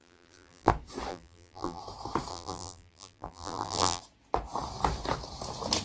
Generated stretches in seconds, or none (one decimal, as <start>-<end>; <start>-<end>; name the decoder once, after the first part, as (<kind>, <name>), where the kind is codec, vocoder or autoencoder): 0.0-0.7 (vocoder, BigVGAN v2); 1.1-1.8; 2.3-4.0